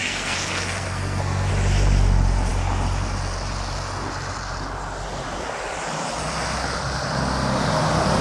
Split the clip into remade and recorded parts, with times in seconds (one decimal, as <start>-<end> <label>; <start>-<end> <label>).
0.0-1.5 remade; 1.5-8.2 recorded